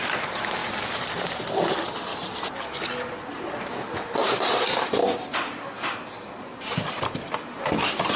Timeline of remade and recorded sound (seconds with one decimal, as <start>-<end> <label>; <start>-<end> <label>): 0.0-2.1 remade; 2.1-3.3 recorded; 3.3-5.0 remade; 5.0-6.4 recorded; 6.4-8.2 remade